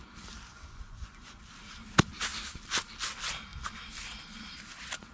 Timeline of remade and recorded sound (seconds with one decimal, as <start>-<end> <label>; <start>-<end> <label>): 0.0-0.5 recorded; 0.5-1.4 remade; 1.4-5.1 recorded